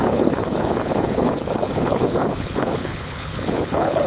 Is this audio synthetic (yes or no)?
yes